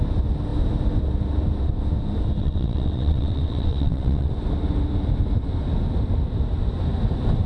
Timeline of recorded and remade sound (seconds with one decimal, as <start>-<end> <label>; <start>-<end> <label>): 0.0-2.4 recorded; 2.4-4.3 remade; 4.3-7.5 recorded